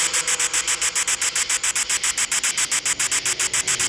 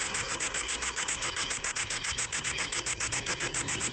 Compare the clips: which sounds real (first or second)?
first